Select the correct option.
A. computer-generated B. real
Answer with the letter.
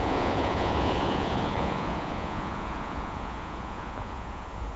A